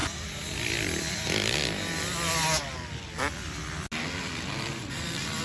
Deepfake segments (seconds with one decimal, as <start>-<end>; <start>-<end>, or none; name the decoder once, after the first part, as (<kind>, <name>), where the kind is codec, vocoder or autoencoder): none